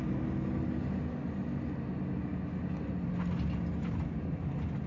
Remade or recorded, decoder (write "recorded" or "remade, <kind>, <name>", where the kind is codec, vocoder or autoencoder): recorded